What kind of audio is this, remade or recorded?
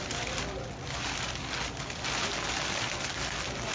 recorded